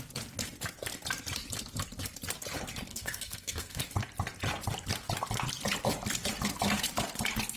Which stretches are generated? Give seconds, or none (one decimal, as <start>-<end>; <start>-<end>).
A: 2.9-3.8